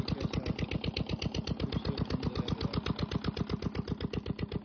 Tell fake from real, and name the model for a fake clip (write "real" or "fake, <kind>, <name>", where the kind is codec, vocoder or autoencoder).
real